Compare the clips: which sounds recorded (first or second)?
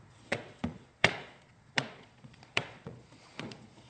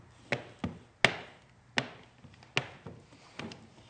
second